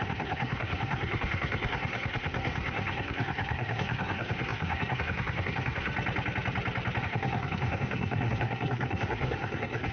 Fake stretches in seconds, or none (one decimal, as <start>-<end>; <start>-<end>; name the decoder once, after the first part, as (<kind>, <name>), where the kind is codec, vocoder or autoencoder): 0.0-5.9 (codec, SNAC); 7.0-9.9